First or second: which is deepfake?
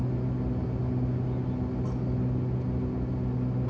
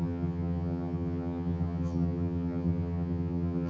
second